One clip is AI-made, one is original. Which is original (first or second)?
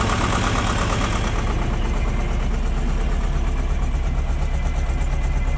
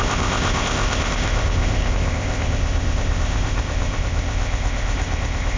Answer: first